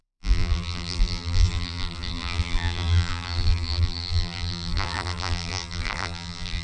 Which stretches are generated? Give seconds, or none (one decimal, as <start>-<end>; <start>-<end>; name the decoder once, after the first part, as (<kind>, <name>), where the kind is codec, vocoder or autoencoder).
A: 0.0-6.6 (vocoder, BigVGAN v2)